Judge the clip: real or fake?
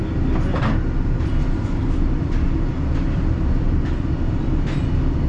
real